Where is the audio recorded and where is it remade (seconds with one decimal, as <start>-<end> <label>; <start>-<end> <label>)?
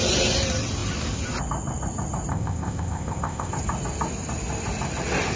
0.0-2.3 recorded; 2.3-3.5 remade; 3.5-5.4 recorded